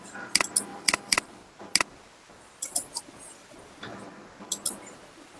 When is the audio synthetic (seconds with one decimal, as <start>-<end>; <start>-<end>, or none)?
0.7-1.3